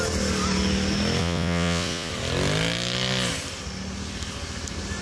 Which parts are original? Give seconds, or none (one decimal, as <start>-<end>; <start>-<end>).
0.0-1.2; 2.1-5.0